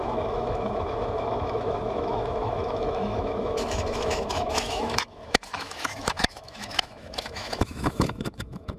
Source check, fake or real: fake